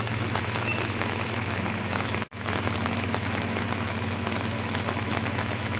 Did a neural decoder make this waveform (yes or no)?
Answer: yes